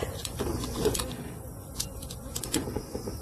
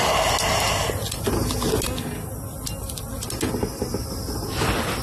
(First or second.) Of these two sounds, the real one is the second